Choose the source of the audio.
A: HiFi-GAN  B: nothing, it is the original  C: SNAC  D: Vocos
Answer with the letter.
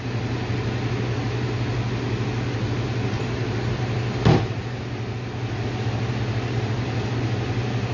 B